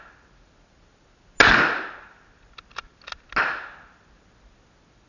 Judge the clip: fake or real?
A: real